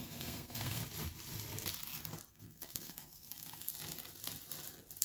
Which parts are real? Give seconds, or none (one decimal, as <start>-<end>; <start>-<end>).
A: 0.8-2.3; 3.7-5.0